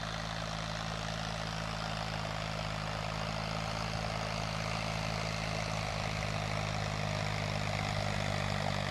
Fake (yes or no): no